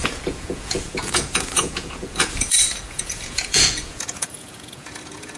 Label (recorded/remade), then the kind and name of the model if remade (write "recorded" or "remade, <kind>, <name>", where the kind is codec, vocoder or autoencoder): remade, vocoder, Vocos